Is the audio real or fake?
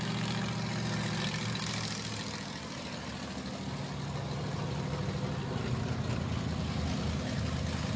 real